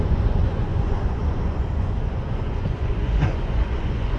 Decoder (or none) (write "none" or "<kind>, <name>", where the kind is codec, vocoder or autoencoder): vocoder, Vocos